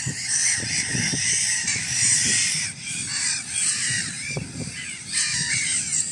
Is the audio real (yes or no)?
no